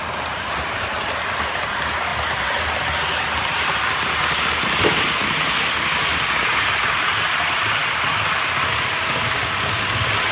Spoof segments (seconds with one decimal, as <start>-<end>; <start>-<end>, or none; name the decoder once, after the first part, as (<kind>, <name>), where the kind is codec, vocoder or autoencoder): none